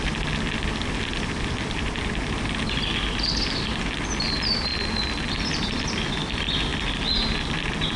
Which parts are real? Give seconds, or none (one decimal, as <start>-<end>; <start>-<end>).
0.0-8.0